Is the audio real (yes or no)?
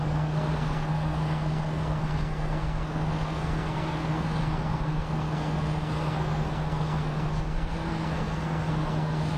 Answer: no